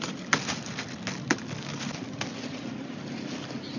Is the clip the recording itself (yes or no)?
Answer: yes